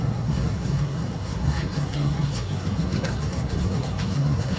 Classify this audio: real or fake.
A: fake